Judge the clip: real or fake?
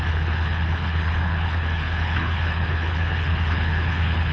fake